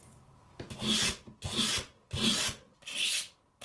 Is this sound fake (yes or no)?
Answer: no